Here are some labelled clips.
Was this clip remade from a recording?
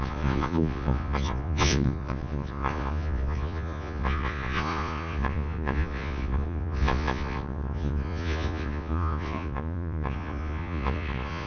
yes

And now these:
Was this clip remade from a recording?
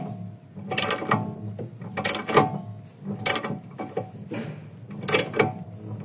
no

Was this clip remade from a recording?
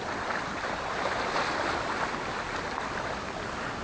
yes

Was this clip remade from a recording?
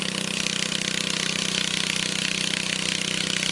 no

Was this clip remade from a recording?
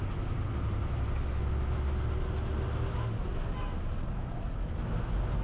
no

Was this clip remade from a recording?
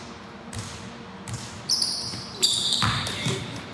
no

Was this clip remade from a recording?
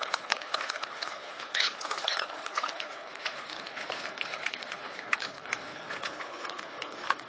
yes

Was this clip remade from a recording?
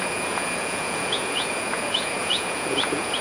yes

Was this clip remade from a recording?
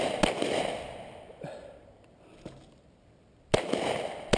no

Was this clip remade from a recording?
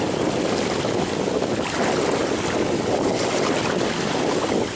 no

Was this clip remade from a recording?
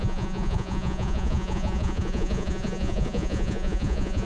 yes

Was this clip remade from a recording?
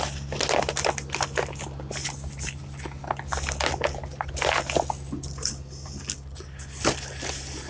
no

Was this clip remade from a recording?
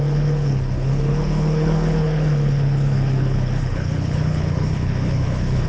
yes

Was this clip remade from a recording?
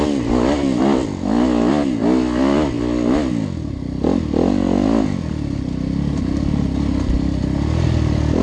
no